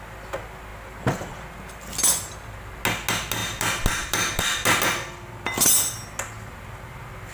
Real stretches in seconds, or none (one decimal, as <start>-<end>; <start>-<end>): 0.0-7.3